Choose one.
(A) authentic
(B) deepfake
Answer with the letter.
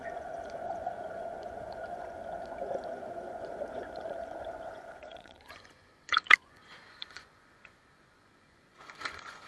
B